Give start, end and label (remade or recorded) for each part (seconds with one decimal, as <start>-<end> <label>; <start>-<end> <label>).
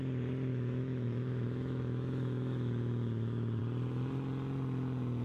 0.0-0.5 recorded; 0.5-3.6 remade; 3.6-5.2 recorded